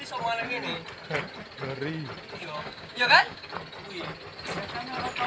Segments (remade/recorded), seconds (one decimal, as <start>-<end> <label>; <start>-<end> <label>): 0.0-2.4 recorded; 2.4-3.5 remade; 3.5-5.3 recorded